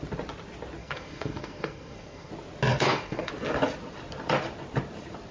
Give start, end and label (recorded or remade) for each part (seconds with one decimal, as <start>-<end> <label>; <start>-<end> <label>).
0.0-0.8 recorded; 0.8-2.3 remade; 2.3-2.7 recorded; 2.7-3.3 remade; 3.3-5.3 recorded